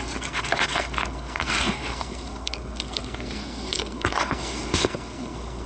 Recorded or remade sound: remade